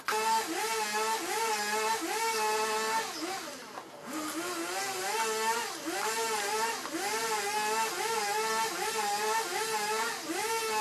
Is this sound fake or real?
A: real